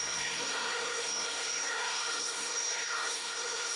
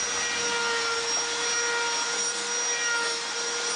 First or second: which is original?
second